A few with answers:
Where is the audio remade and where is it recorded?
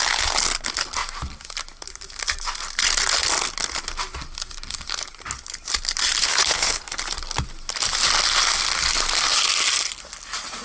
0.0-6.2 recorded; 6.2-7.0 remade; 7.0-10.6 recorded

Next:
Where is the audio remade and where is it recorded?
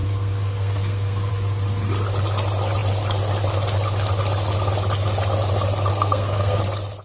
0.0-1.3 remade; 1.3-5.9 recorded; 5.9-6.6 remade; 6.6-7.0 recorded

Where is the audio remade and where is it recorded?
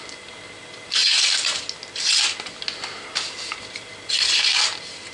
0.0-5.1 recorded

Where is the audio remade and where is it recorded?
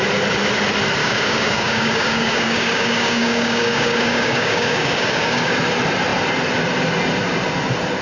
0.0-1.0 recorded; 1.0-5.5 remade; 5.5-8.0 recorded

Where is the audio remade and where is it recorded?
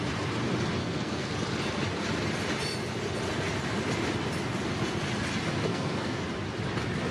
0.0-0.8 recorded; 0.8-1.3 remade; 1.3-5.7 recorded; 5.7-6.2 remade; 6.2-7.1 recorded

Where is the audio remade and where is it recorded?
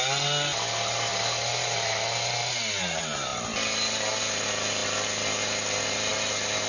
0.0-6.7 recorded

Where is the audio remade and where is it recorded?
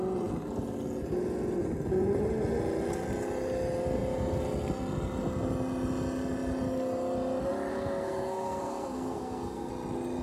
0.0-7.7 recorded; 7.7-9.7 remade; 9.7-10.2 recorded